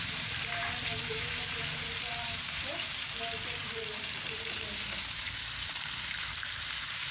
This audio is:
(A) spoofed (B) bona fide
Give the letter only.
A